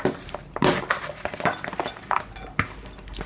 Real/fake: real